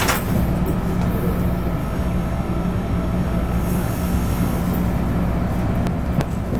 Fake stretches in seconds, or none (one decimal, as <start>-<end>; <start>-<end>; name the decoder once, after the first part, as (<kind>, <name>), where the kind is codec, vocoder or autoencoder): 1.8-4.6 (codec, DAC)